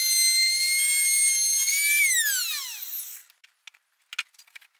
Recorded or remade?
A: recorded